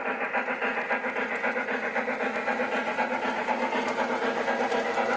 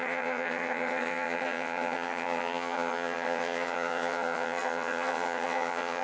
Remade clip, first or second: second